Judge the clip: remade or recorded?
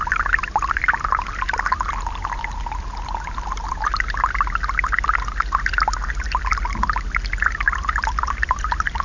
recorded